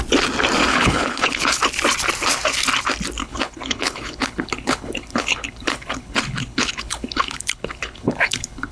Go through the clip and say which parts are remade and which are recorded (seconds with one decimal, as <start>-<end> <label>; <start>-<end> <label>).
0.0-0.7 recorded; 0.7-1.6 remade; 1.6-3.2 recorded; 3.2-8.7 remade